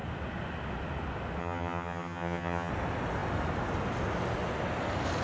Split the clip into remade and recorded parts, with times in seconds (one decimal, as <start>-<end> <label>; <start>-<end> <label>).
0.0-1.4 recorded; 1.4-2.7 remade; 2.7-5.2 recorded